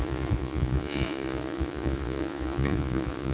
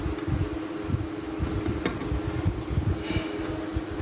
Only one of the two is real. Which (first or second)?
second